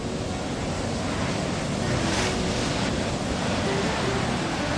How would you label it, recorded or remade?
recorded